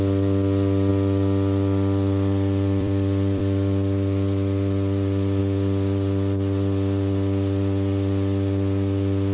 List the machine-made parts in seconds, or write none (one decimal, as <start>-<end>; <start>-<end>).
0.9-5.4